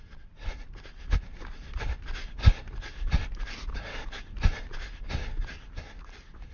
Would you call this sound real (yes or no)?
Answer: yes